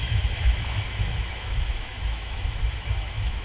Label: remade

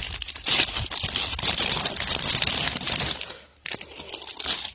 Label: recorded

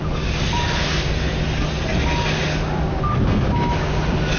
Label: recorded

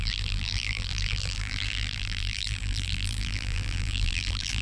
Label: remade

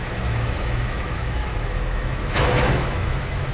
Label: remade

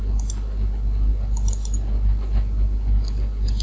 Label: recorded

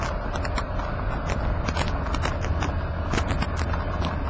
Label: recorded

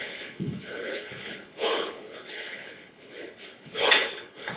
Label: remade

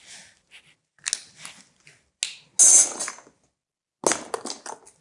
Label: recorded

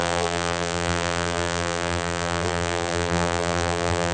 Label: remade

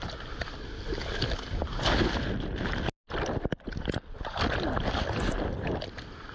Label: recorded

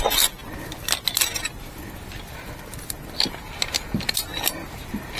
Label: recorded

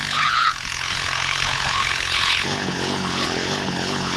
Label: remade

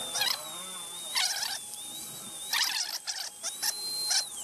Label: recorded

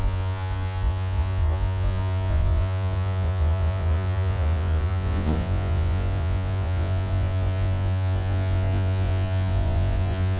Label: remade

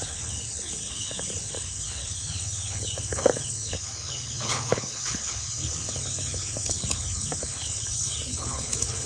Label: remade